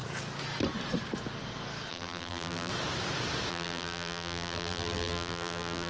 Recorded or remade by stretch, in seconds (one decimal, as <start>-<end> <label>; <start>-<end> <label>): 0.0-1.9 recorded; 1.9-2.7 remade; 2.7-3.5 recorded; 3.5-5.9 remade

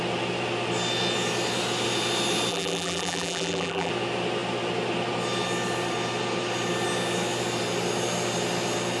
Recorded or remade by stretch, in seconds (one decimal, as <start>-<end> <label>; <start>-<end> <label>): 0.0-2.5 recorded; 2.5-3.9 remade; 3.9-9.0 recorded

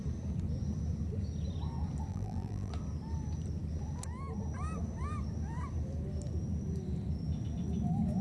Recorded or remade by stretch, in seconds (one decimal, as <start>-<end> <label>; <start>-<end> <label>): 0.0-2.1 recorded; 2.1-2.7 remade; 2.7-8.2 recorded

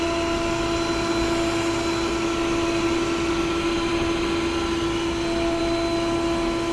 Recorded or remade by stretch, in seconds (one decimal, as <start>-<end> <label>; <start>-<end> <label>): 0.0-6.7 recorded

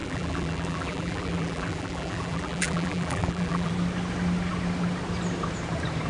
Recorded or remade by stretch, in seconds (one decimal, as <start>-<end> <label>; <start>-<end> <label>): 0.0-3.7 remade; 3.7-6.1 recorded

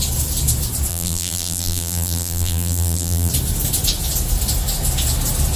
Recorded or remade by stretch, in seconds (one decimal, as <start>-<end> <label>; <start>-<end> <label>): 0.0-0.9 recorded; 0.9-3.3 remade; 3.3-5.6 recorded